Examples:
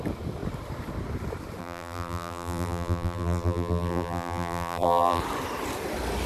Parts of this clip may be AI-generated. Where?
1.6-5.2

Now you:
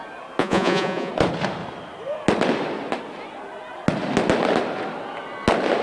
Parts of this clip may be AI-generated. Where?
0.4-1.1

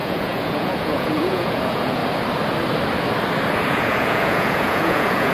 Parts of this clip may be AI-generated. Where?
0.0-2.0; 3.5-5.3

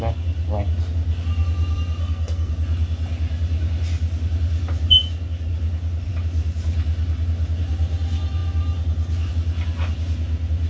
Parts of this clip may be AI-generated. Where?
2.0-2.5